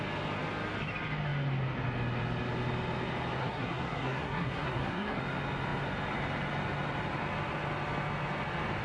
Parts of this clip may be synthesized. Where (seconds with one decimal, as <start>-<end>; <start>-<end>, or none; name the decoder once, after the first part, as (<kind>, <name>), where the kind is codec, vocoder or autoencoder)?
3.4-5.2 (codec, SNAC)